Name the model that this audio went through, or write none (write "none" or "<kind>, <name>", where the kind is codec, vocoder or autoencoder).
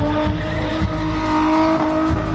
none